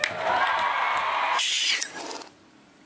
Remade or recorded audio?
recorded